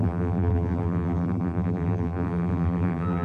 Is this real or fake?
fake